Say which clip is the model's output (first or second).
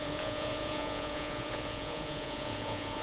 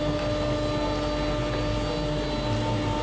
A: first